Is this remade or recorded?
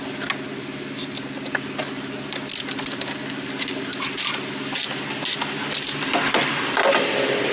recorded